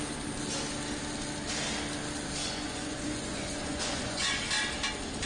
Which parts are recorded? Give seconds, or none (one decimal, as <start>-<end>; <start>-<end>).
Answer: 0.0-2.4; 4.4-5.3

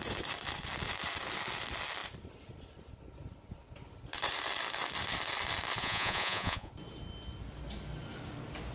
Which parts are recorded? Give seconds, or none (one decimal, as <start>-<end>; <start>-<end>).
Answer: 0.0-5.8; 6.7-8.7

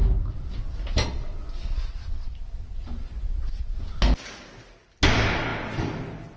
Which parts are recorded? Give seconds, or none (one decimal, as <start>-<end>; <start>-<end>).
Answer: 0.0-6.4